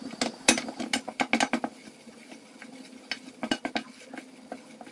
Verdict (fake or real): real